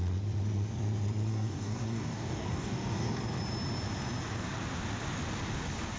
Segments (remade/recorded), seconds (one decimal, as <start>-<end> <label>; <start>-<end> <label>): 0.0-1.3 recorded; 1.3-3.2 remade; 3.2-6.0 recorded